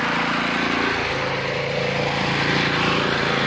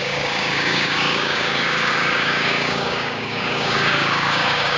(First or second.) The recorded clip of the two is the first